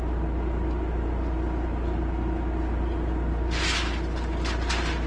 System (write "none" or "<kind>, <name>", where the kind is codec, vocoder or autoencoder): none